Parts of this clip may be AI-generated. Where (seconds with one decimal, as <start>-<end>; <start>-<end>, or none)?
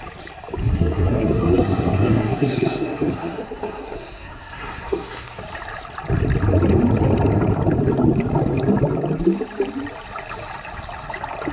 0.6-5.4